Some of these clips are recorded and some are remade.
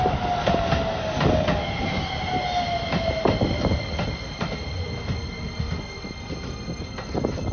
recorded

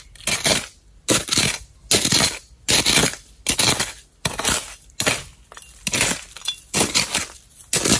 recorded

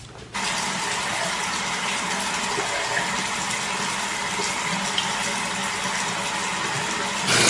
recorded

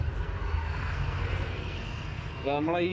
remade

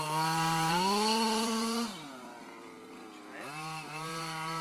remade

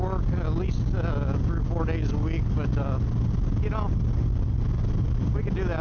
recorded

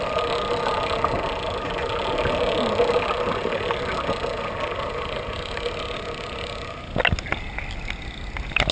recorded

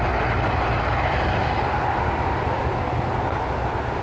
recorded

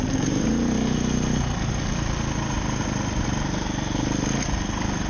recorded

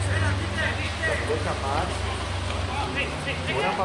recorded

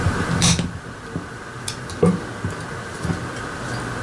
recorded